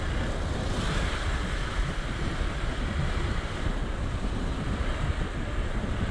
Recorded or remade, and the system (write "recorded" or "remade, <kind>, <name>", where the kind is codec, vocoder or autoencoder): recorded